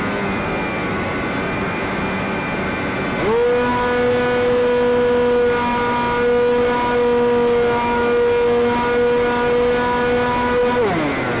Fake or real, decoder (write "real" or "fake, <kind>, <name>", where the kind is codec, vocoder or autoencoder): real